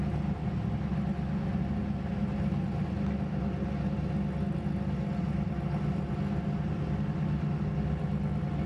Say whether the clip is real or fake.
real